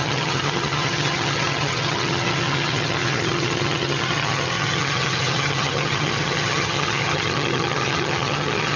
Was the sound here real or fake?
fake